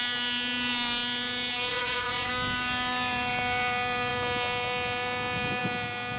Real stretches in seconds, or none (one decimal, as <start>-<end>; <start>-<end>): 0.0-1.7; 2.3-6.2